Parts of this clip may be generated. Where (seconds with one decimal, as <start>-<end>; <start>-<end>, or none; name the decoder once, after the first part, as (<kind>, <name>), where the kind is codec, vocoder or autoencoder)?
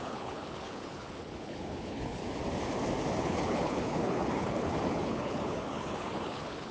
0.0-2.2 (codec, HILCodec); 3.2-6.7